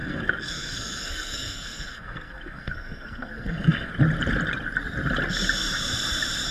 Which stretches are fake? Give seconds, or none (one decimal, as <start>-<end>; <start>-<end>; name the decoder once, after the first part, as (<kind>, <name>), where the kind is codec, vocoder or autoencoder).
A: 0.0-3.9 (codec, SNAC)